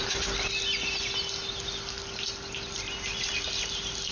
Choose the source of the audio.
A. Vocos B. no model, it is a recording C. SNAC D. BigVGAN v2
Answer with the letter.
B